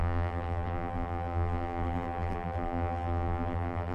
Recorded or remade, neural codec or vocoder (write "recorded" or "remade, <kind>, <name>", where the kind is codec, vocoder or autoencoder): remade, vocoder, BigVGAN v2